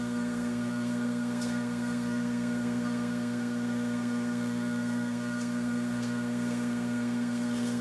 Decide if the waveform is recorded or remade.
remade